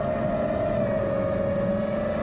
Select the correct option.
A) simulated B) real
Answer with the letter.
B